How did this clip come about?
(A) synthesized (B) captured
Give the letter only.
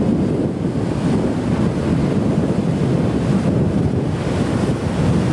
B